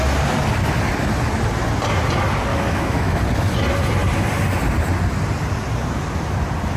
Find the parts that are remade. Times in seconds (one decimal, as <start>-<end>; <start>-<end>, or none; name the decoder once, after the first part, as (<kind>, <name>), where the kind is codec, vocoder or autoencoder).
2.5-3.2 (autoencoder, DAC-VAE)